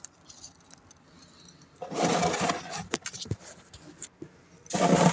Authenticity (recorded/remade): recorded